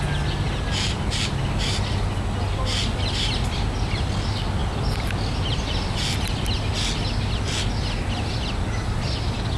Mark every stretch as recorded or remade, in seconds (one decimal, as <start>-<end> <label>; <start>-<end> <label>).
0.0-9.6 recorded